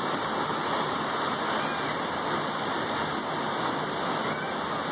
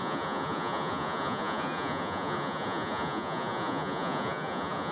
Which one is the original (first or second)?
first